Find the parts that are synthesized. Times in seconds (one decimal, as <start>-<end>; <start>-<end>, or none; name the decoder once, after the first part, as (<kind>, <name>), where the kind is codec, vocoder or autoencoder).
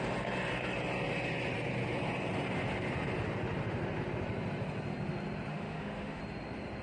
5.5-6.2 (autoencoder, DAC-VAE)